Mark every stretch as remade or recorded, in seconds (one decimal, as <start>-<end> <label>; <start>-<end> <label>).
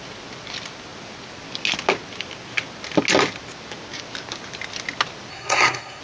0.0-5.3 recorded; 5.3-6.0 remade